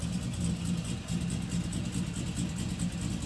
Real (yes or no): yes